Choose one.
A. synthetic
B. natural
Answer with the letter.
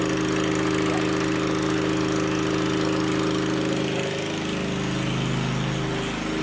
B